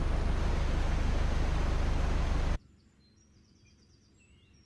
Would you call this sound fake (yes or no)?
no